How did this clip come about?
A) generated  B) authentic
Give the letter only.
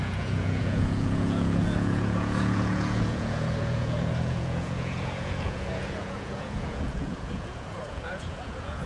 A